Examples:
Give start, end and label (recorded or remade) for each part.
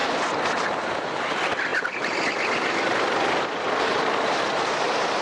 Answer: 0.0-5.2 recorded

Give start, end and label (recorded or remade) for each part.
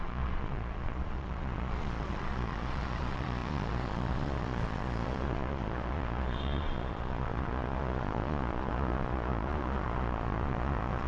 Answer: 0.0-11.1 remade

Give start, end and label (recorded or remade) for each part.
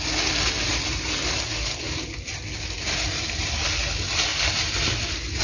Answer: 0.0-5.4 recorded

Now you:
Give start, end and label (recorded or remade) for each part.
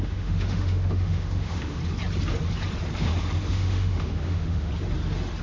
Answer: 0.0-1.8 remade; 1.8-3.5 recorded; 3.5-4.7 remade; 4.7-5.4 recorded